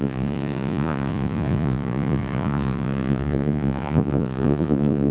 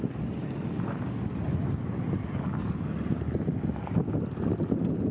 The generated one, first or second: first